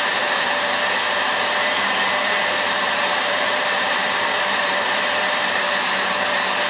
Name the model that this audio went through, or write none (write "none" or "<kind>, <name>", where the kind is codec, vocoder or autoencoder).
vocoder, BigVGAN v2